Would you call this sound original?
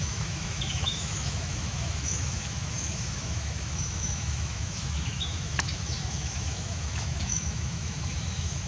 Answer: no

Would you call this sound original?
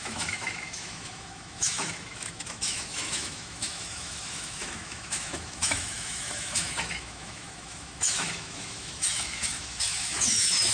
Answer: no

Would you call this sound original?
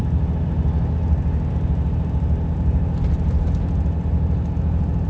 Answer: yes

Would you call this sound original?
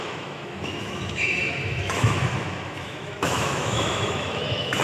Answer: no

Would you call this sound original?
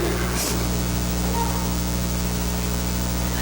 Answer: yes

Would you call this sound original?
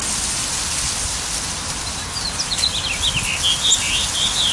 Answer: yes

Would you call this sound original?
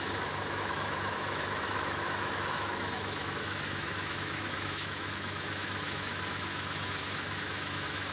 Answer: no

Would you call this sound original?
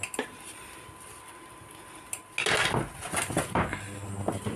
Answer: yes